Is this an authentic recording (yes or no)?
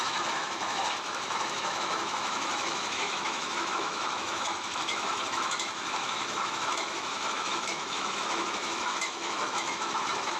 no